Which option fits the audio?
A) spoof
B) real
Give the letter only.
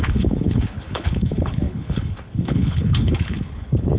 A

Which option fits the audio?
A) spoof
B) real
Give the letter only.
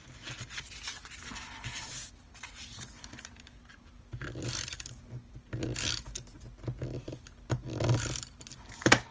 B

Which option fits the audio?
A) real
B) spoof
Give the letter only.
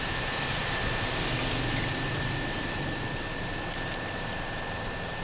B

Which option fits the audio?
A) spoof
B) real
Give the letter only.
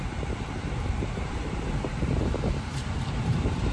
A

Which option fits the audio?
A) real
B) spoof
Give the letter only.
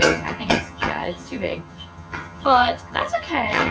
B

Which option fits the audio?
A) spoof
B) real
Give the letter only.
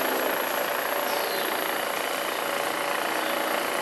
B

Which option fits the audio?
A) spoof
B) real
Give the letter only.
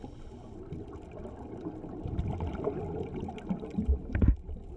B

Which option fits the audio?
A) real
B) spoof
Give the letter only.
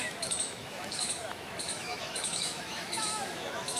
B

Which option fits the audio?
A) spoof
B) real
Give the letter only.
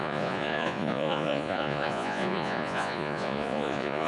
A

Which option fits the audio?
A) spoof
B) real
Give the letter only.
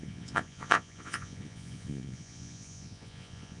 A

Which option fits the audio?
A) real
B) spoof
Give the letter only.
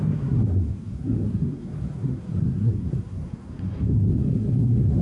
B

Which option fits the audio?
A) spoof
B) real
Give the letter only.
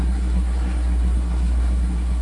A